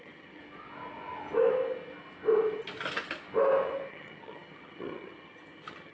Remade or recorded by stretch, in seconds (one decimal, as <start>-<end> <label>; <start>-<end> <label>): 0.0-0.4 remade; 0.4-3.9 recorded; 3.9-5.9 remade